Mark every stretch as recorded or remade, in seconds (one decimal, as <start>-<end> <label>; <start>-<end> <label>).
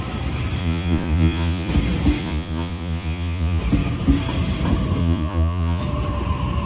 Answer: 0.0-0.6 recorded; 0.6-1.7 remade; 1.7-2.2 recorded; 2.2-3.6 remade; 3.6-5.0 recorded; 5.0-5.8 remade; 5.8-6.7 recorded